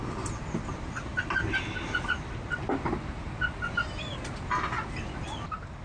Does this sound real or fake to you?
real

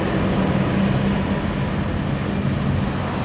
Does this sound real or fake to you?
real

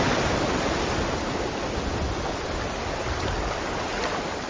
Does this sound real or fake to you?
real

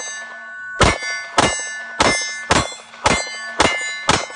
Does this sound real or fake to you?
real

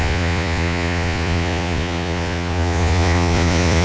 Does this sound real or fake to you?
fake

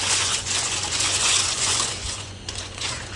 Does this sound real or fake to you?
fake